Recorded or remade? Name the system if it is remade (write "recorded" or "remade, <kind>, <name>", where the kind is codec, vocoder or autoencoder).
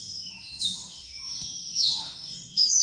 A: remade, autoencoder, DAC-VAE